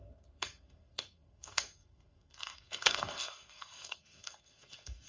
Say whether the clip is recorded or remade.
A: remade